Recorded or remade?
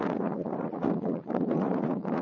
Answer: remade